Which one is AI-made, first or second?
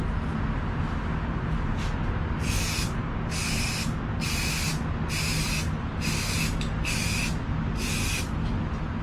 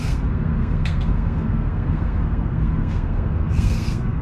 second